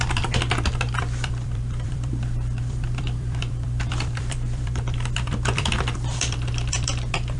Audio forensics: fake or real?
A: fake